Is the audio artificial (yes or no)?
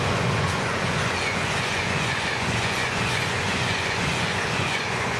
yes